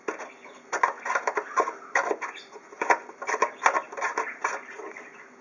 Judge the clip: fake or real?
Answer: real